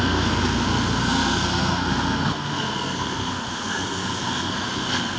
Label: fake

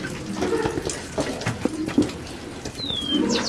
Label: real